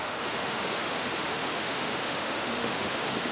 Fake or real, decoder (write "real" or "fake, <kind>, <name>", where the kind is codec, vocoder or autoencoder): fake, autoencoder, DAC-VAE